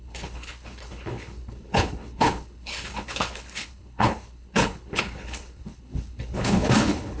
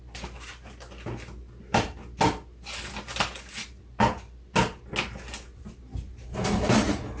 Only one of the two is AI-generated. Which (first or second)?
first